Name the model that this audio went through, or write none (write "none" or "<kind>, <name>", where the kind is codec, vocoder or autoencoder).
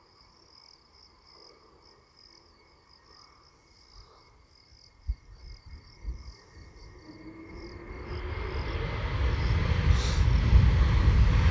none